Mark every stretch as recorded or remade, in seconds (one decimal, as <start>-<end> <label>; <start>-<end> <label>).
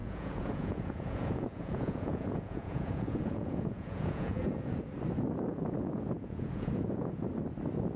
0.0-4.8 remade; 4.8-5.5 recorded; 5.5-7.3 remade; 7.3-8.0 recorded